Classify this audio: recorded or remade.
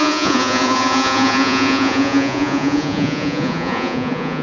remade